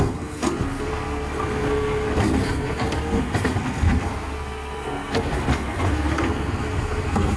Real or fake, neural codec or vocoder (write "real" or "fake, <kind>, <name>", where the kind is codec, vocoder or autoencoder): fake, codec, SNAC